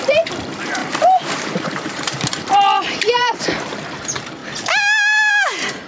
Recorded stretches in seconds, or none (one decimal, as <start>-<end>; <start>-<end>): 0.0-0.8; 3.4-5.9